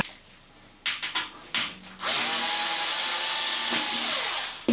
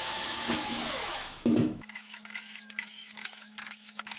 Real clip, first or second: first